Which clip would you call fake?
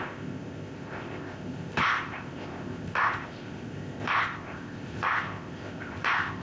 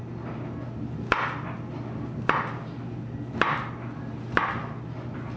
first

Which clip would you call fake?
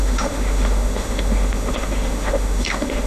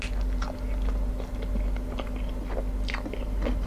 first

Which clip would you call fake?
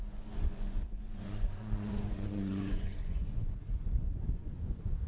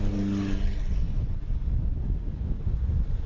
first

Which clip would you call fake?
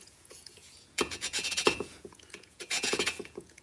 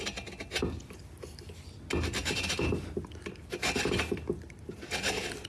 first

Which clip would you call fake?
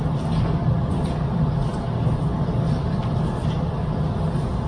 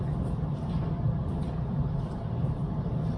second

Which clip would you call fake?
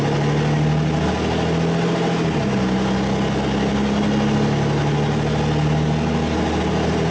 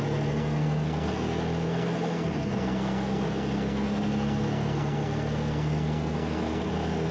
second